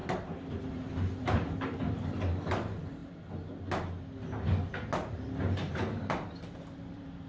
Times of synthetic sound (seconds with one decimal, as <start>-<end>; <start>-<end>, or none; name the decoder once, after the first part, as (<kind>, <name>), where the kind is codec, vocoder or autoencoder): 0.7-3.0 (vocoder, BigVGAN v2); 5.1-7.3